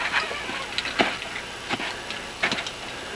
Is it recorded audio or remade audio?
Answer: recorded